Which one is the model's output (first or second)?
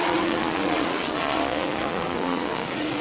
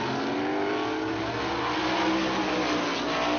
first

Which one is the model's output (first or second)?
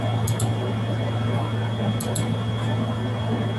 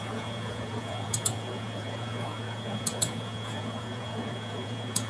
second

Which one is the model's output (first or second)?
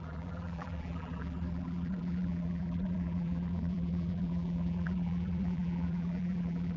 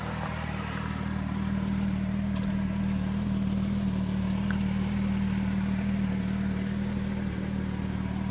first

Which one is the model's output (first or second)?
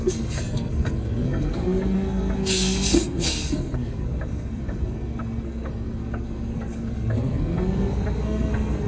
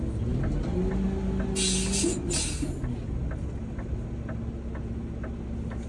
first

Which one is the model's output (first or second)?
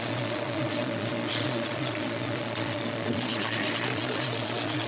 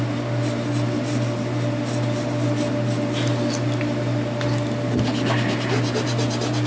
first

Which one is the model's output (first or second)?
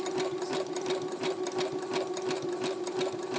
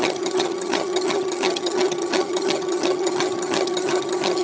second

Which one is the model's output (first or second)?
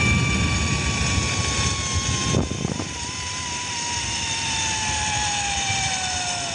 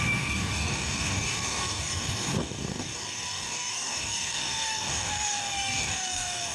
second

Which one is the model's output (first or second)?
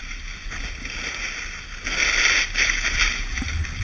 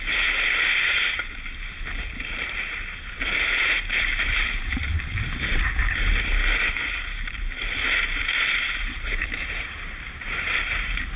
second